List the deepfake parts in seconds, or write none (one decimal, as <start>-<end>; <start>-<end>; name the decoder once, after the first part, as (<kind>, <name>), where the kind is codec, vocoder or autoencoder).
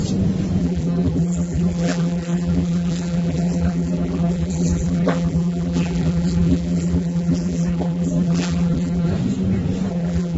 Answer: 0.6-9.1 (vocoder, BigVGAN v2); 9.9-10.4